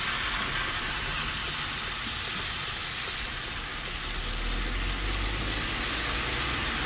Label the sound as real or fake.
real